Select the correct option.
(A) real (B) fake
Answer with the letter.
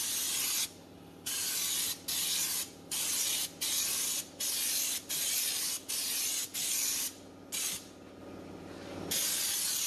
A